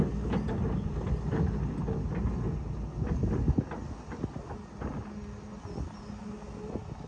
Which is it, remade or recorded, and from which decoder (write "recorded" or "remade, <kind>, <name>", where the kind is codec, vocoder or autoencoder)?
recorded